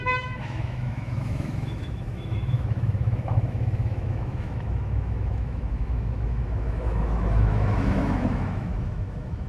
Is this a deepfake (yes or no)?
yes